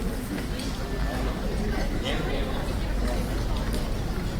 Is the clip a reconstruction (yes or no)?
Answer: no